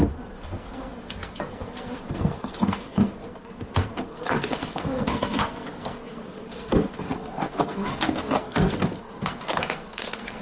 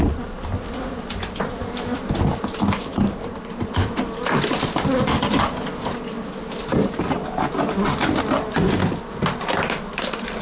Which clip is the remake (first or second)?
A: first